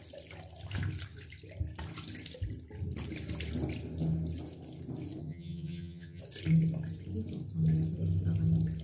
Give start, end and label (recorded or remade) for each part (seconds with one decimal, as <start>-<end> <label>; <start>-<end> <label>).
0.0-5.2 recorded; 5.2-6.2 remade; 6.2-8.8 recorded